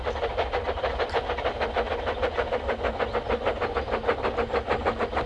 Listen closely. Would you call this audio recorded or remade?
recorded